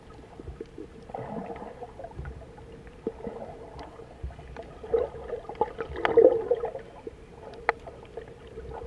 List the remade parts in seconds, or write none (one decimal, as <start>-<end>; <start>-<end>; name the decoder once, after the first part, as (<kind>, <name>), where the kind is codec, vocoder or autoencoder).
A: none